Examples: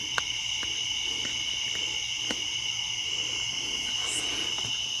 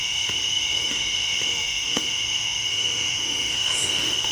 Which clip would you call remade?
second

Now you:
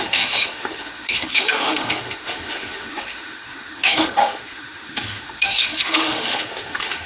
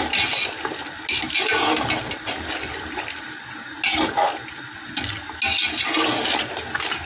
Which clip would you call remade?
first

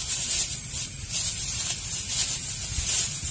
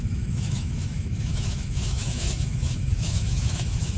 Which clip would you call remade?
second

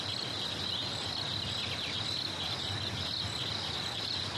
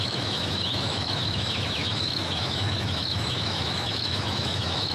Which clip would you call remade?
second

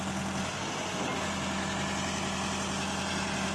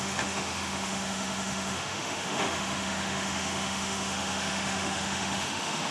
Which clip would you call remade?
second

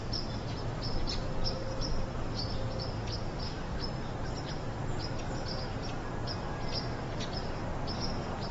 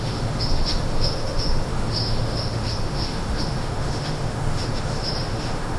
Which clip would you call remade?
second